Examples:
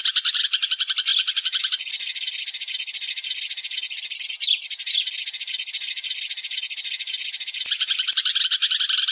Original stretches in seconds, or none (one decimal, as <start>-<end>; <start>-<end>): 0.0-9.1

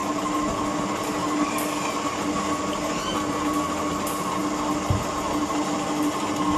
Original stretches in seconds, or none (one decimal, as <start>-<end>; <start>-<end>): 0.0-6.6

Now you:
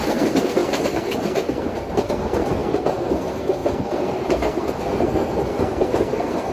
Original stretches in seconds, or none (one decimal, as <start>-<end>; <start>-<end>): none